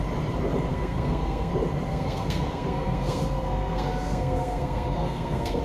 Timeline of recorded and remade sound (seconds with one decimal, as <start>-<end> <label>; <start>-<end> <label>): 0.0-0.7 recorded; 0.7-1.5 remade; 1.5-1.9 recorded; 1.9-5.6 remade